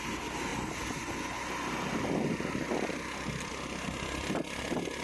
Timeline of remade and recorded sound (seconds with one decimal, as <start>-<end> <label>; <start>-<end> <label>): 0.0-5.0 recorded